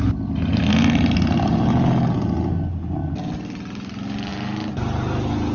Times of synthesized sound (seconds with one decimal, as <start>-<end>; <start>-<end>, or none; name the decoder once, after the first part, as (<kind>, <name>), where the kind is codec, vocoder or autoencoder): none